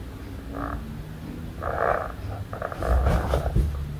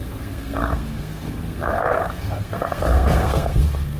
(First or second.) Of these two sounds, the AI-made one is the second